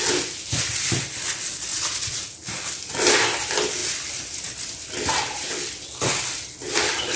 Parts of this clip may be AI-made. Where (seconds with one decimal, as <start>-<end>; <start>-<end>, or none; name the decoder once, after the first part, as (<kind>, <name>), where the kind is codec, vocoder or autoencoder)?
1.7-2.4 (vocoder, Vocos)